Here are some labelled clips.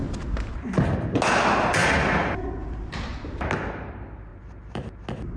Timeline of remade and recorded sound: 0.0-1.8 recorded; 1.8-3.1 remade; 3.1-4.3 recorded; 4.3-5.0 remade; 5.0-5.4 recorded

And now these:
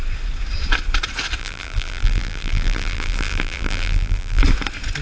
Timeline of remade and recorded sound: 0.0-1.4 recorded; 1.4-4.4 remade; 4.4-5.0 recorded